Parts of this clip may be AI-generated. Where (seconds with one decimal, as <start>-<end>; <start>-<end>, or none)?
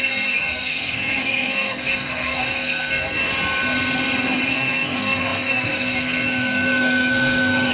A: 0.0-3.3; 4.5-7.7